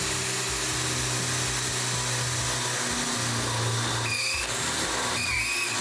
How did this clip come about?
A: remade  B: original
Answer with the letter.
B